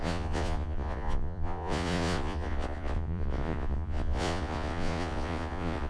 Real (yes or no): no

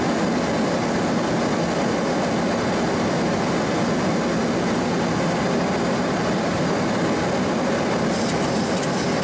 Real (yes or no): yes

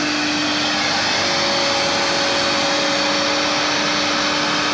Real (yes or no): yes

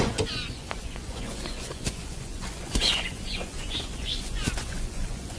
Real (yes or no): no